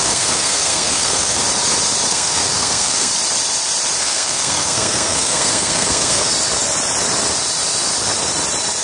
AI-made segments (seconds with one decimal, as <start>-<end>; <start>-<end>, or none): 0.0-1.4; 2.1-3.1; 4.0-6.3